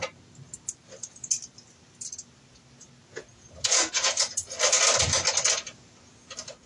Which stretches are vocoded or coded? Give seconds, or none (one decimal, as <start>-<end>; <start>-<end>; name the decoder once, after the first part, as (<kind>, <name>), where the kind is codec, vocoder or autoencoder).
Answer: 3.0-4.6 (vocoder, Vocos)